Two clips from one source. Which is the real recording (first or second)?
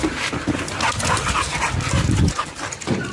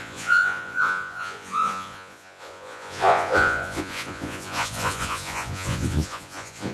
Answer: first